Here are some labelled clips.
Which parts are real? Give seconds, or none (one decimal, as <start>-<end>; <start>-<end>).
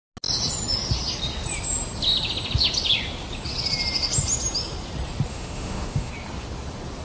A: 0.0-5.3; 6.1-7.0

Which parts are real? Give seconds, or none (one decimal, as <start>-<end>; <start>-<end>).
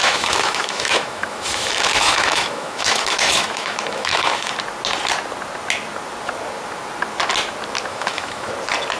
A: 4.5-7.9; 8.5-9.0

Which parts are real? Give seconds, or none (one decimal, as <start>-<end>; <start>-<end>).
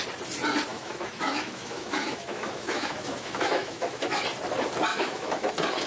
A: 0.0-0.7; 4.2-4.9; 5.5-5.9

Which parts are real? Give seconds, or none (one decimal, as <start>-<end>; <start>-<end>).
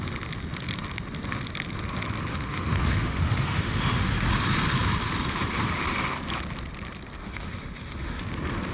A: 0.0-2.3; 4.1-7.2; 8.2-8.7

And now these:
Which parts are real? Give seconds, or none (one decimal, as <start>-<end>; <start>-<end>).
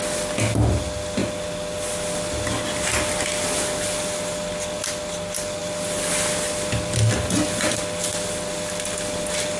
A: 0.0-9.6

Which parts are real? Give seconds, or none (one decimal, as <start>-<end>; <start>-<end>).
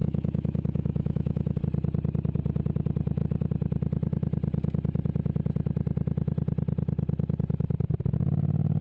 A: 1.6-8.8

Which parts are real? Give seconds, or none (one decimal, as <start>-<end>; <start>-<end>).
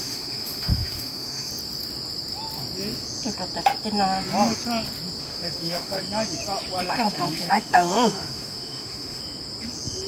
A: 1.5-5.2; 6.0-6.8; 9.2-10.1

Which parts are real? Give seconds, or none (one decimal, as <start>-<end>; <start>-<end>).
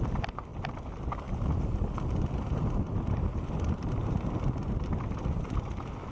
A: 0.0-6.1